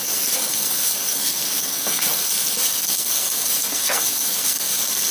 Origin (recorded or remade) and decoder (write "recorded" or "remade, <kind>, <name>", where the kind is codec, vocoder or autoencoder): remade, codec, SNAC